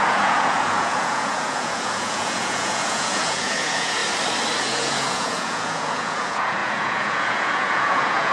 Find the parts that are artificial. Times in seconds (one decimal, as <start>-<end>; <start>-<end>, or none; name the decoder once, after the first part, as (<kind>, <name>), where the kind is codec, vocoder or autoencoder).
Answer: 0.0-4.0 (vocoder, Vocos); 4.6-8.3